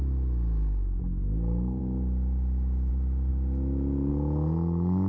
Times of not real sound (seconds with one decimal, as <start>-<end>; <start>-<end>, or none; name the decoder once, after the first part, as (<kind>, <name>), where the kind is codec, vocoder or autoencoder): none